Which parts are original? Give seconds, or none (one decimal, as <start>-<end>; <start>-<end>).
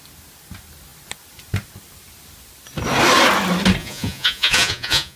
0.0-3.8